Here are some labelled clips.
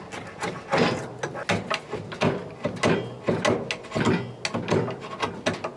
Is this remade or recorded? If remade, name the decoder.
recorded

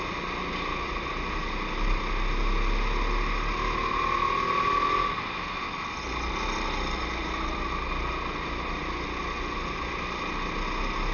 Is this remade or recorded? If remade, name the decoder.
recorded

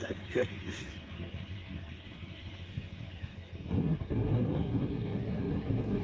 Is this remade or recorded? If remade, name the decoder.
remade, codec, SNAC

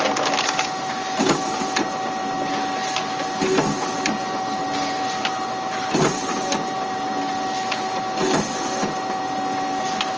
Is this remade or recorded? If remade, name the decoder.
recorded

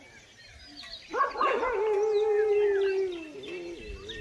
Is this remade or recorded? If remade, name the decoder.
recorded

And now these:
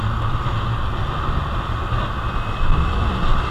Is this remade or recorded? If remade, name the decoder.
recorded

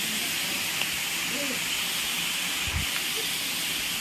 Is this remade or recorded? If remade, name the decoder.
recorded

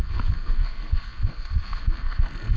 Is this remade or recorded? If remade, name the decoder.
remade, codec, SNAC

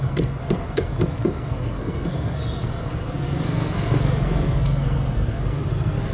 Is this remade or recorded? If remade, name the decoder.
remade, codec, SNAC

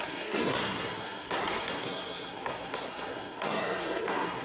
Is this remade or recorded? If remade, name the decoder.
remade, codec, SNAC